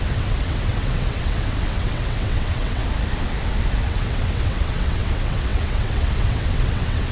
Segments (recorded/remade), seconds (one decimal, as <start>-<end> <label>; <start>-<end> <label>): 0.0-2.8 remade; 2.8-3.8 recorded; 3.8-7.1 remade